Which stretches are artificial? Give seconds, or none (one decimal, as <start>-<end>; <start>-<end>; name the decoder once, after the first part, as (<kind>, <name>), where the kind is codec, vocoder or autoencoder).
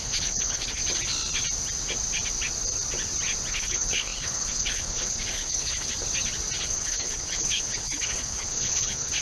0.0-0.8 (codec, HILCodec); 3.5-5.9; 6.6-9.2